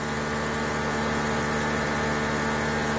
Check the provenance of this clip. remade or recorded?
recorded